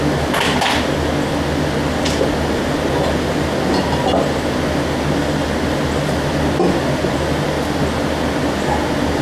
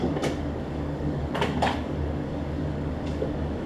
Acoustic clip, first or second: first